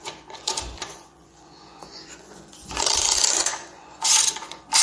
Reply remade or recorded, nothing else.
remade